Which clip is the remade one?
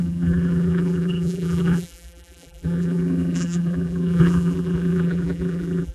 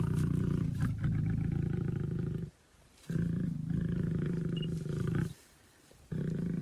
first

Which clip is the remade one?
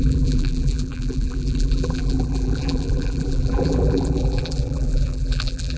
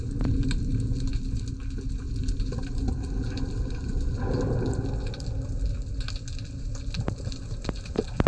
first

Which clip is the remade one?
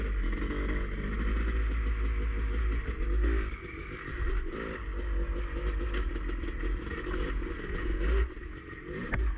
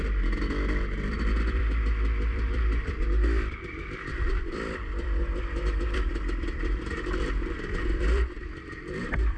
second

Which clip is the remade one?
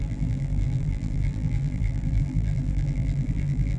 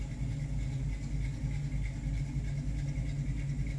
first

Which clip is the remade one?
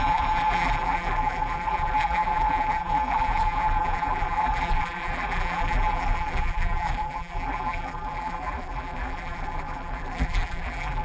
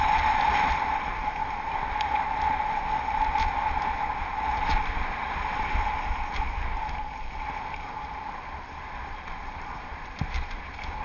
first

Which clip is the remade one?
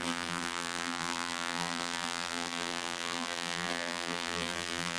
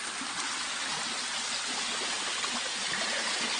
first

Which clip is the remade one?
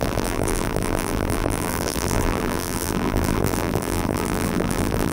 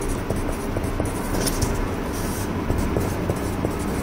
first